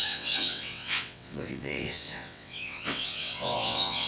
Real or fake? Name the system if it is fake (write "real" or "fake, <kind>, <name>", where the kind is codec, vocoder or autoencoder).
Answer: fake, vocoder, WaveNeXt